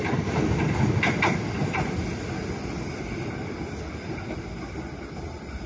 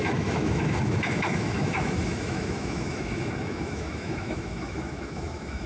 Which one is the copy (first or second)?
second